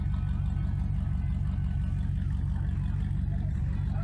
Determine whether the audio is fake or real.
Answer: real